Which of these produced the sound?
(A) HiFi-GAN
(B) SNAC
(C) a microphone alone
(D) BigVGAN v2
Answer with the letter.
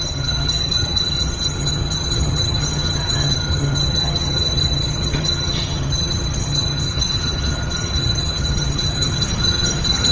A